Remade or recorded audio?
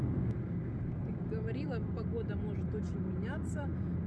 recorded